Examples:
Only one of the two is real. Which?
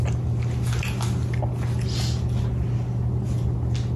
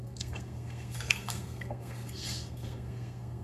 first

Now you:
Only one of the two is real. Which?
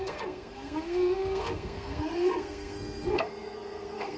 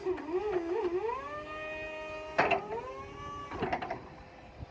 second